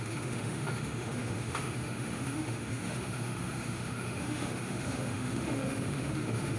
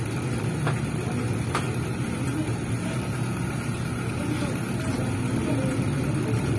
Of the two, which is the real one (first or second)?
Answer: second